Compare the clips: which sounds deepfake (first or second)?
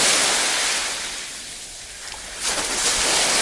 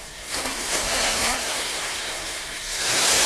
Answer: second